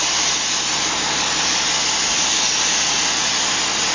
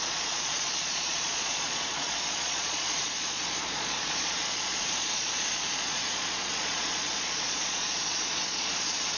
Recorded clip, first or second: first